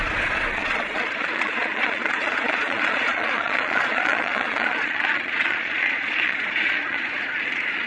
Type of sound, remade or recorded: remade